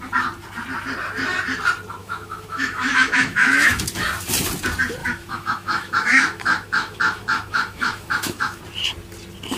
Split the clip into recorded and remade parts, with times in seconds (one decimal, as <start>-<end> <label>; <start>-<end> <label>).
0.0-2.0 recorded; 2.0-3.8 remade; 3.8-5.0 recorded; 5.0-8.6 remade; 8.6-9.6 recorded